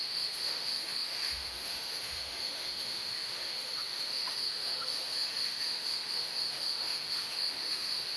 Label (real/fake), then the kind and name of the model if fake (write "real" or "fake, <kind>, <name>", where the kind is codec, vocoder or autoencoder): fake, autoencoder, DAC-VAE